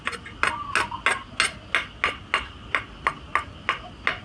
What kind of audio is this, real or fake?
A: real